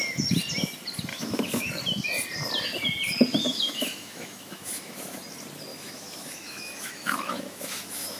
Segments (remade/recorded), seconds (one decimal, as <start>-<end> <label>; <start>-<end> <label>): 0.0-1.1 recorded; 1.1-1.7 remade; 1.7-3.5 recorded; 3.5-5.2 remade; 5.2-5.7 recorded; 5.7-8.2 remade